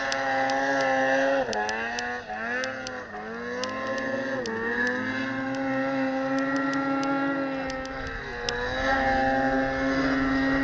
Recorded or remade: recorded